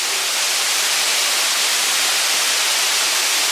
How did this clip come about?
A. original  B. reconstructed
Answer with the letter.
A